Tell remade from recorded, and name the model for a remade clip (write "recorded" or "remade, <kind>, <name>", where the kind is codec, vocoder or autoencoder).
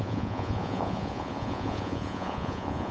remade, vocoder, Vocos